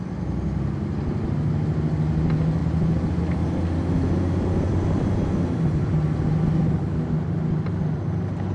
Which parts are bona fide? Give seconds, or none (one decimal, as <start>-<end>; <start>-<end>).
0.0-8.5